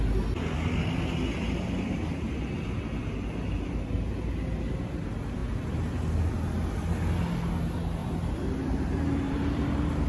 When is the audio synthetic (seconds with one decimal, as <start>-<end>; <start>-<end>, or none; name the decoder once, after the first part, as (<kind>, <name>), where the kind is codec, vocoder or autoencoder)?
8.0-10.1 (vocoder, BigVGAN v2)